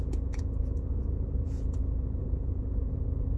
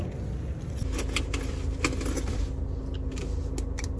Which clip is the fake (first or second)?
first